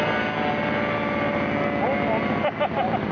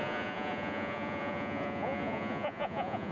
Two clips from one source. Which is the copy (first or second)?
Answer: second